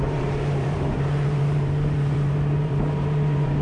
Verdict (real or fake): fake